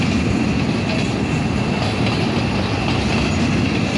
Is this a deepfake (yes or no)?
no